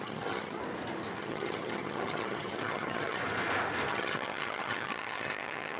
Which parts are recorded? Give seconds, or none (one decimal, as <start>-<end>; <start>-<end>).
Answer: 0.6-1.2; 3.2-3.9